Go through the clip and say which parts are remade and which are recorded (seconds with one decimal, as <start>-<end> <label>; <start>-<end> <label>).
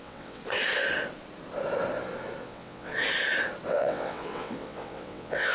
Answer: 0.0-0.4 remade; 0.4-2.4 recorded; 2.4-2.9 remade; 2.9-3.7 recorded; 3.7-5.5 remade